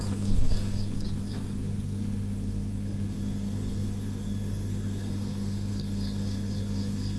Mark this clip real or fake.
fake